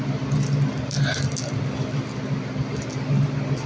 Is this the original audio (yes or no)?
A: yes